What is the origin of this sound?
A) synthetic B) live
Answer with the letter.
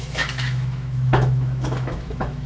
A